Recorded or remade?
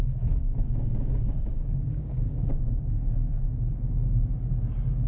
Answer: remade